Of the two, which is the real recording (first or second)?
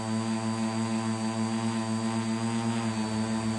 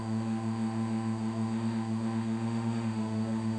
first